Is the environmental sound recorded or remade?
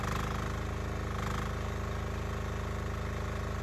recorded